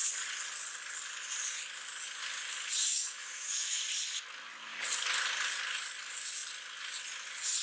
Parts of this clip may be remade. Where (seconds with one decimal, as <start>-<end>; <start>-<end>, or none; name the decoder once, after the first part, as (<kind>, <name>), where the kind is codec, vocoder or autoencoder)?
2.8-3.8 (autoencoder, DAC-VAE)